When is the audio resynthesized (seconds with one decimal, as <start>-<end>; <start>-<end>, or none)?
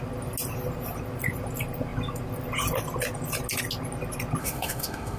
4.4-5.2